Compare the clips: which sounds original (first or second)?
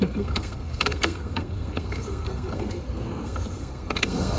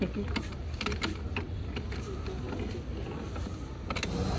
second